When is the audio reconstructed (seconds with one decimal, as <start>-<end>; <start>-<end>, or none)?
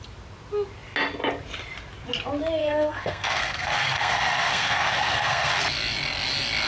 2.6-5.5